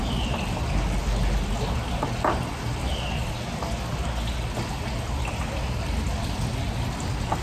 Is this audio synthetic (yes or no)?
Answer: no